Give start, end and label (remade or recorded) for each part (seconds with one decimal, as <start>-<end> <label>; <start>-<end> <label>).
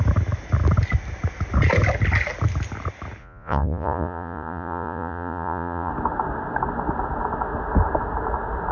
0.0-3.2 recorded; 3.2-5.9 remade; 5.9-8.7 recorded